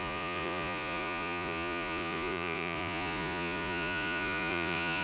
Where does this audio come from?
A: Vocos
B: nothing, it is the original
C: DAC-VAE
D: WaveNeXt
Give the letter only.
A